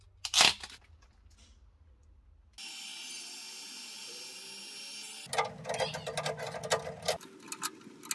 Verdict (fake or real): real